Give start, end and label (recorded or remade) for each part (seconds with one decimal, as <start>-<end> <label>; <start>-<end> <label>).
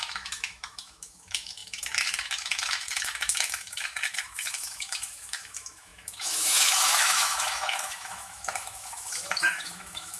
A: 0.0-10.2 remade